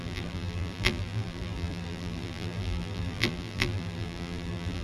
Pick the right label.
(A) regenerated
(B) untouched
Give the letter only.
A